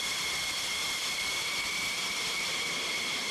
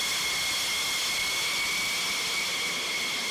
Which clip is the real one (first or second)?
second